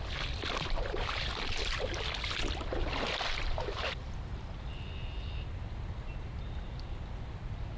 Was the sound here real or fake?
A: fake